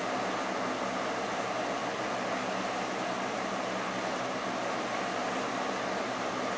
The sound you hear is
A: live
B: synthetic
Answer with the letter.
A